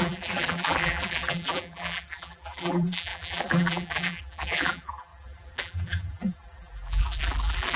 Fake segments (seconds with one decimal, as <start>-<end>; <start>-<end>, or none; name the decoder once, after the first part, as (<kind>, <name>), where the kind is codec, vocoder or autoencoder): 0.0-7.8 (vocoder, BigVGAN v2)

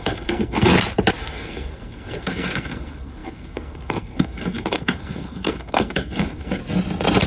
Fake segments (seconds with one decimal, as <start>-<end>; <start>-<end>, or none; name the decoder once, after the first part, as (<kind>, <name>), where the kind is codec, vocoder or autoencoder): 0.0-0.7 (codec, SNAC); 1.2-6.6

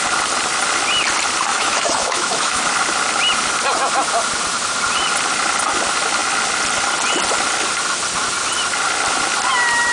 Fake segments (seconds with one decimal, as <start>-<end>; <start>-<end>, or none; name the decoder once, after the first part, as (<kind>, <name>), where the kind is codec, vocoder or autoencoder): 1.5-2.6 (autoencoder, DAC-VAE)